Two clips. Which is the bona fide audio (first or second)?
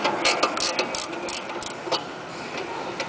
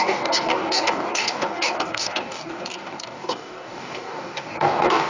first